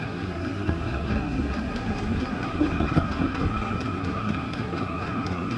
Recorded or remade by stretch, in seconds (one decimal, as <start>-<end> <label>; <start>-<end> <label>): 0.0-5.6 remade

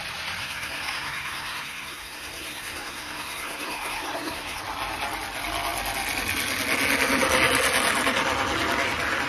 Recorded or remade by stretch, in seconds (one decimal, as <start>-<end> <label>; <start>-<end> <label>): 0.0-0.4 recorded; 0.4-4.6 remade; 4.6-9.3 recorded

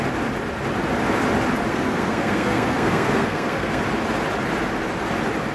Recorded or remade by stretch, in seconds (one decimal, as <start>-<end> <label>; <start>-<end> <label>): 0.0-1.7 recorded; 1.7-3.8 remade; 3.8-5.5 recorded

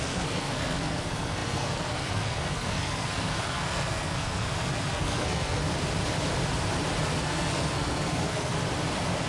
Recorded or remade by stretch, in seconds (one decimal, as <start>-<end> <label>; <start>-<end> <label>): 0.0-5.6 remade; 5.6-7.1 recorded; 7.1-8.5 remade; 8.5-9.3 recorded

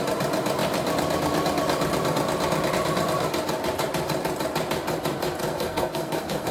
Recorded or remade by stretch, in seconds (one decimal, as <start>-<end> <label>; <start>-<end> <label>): 0.0-5.4 recorded; 5.4-6.5 remade

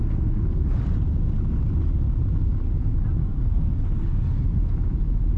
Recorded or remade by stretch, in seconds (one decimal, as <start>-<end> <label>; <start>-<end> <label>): 0.0-3.2 recorded; 3.2-3.8 remade; 3.8-5.4 recorded

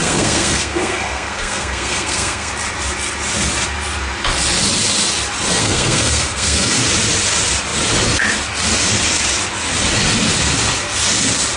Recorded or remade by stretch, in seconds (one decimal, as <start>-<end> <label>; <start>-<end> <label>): 0.0-2.5 remade; 2.5-5.6 recorded; 5.6-6.8 remade; 6.8-11.6 recorded